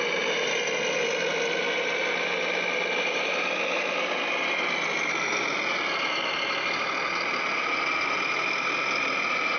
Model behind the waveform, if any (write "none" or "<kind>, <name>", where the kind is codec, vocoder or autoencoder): none